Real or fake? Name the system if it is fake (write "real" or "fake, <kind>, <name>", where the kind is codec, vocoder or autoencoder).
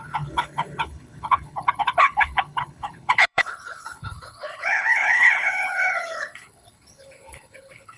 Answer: fake, codec, HILCodec